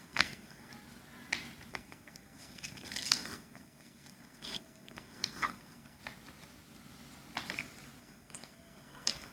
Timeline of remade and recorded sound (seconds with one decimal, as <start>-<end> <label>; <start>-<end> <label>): 0.0-0.7 remade; 0.7-1.7 recorded; 1.7-6.0 remade; 6.0-8.0 recorded; 8.0-9.3 remade